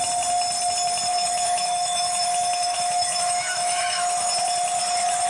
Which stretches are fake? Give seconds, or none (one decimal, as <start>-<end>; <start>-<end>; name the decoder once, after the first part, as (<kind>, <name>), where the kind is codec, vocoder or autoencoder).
1.1-4.3 (autoencoder, DAC-VAE)